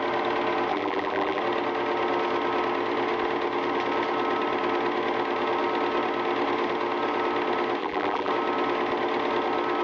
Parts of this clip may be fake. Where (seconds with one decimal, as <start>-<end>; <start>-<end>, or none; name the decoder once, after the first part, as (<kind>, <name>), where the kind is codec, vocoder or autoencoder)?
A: 0.7-1.4 (vocoder, BigVGAN v2); 7.8-8.3